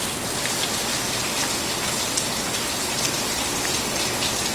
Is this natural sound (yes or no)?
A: yes